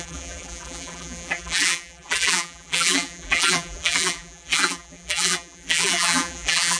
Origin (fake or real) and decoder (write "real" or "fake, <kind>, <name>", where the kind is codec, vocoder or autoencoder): fake, vocoder, BigVGAN v2